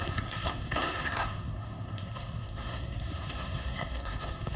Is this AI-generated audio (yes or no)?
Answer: yes